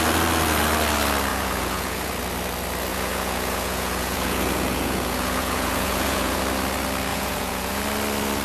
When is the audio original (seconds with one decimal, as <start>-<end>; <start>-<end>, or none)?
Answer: 0.0-1.3; 2.1-2.9; 6.4-7.1; 7.8-8.4